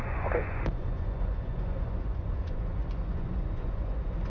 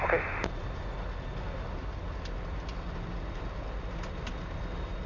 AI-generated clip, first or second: first